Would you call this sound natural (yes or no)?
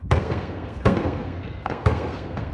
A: no